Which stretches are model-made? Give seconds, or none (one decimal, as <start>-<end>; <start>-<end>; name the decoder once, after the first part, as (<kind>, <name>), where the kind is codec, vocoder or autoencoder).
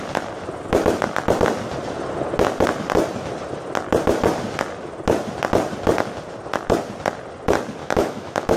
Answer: 7.8-8.6 (autoencoder, DAC-VAE)